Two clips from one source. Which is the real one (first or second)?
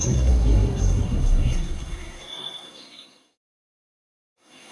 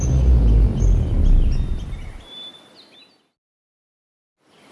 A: second